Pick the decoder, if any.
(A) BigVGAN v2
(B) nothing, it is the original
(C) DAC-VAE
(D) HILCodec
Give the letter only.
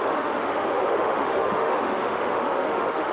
C